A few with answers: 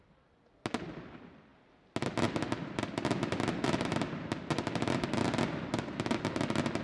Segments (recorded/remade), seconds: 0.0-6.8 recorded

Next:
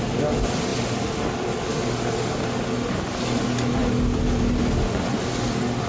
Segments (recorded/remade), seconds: 0.0-5.9 recorded

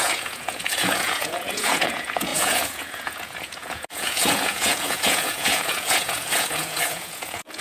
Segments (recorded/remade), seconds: 0.0-7.6 remade

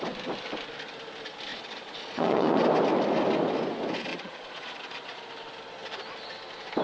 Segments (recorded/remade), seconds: 0.0-1.5 recorded; 1.5-2.6 remade; 2.6-4.1 recorded; 4.1-5.3 remade; 5.3-6.8 recorded